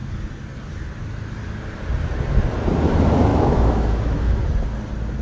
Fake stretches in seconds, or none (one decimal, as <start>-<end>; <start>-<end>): 3.3-4.4